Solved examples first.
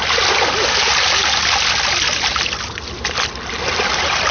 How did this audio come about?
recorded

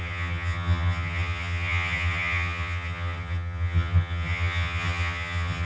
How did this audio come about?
remade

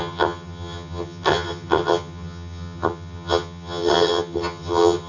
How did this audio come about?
remade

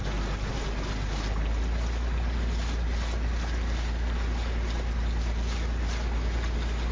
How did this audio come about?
recorded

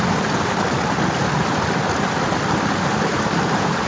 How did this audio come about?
recorded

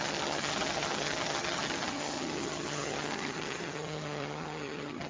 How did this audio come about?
remade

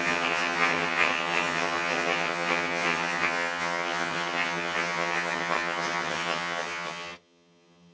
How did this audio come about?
remade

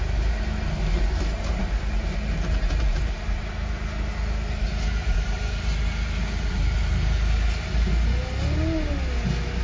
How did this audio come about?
recorded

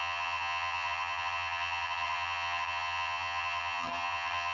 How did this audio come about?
remade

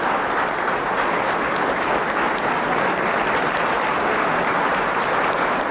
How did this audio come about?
recorded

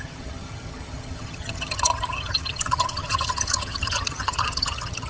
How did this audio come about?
remade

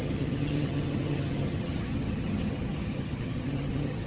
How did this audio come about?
remade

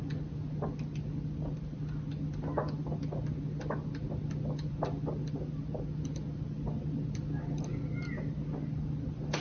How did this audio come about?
recorded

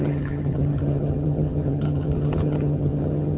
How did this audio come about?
remade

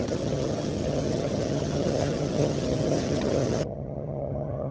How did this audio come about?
remade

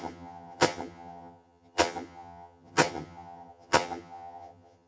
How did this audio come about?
remade